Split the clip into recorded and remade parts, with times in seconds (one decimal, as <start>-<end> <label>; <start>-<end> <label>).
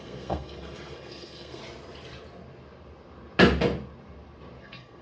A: 0.0-1.6 remade; 1.6-4.6 recorded; 4.6-5.0 remade